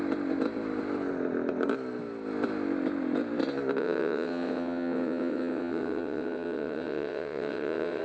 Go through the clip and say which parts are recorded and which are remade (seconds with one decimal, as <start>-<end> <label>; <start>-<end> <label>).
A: 0.0-3.8 recorded; 3.8-8.0 remade

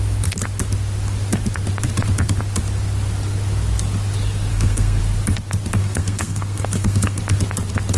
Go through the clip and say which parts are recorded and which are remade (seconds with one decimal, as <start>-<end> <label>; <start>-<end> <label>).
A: 0.0-4.5 recorded; 4.5-5.0 remade; 5.0-5.8 recorded; 5.8-7.2 remade; 7.2-8.0 recorded

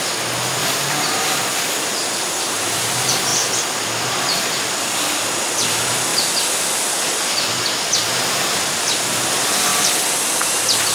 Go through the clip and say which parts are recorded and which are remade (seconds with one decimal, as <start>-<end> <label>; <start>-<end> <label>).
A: 0.0-6.1 remade; 6.1-7.9 recorded; 7.9-9.7 remade; 9.7-10.5 recorded; 10.5-10.9 remade

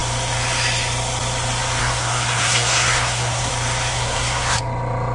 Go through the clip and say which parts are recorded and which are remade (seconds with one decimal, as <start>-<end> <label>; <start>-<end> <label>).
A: 0.0-1.8 recorded; 1.8-3.5 remade; 3.5-3.9 recorded; 3.9-4.6 remade; 4.6-5.1 recorded